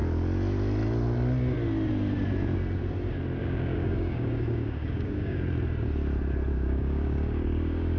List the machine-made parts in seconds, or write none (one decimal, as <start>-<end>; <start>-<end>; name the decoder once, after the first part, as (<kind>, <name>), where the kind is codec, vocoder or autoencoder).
3.4-5.4 (codec, DAC); 6.5-8.0